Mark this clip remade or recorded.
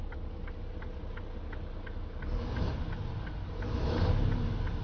recorded